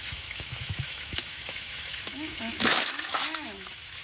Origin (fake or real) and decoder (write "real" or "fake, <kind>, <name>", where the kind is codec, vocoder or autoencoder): fake, autoencoder, DAC-VAE